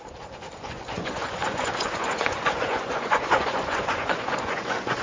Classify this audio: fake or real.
fake